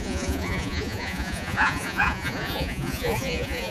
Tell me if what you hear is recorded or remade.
remade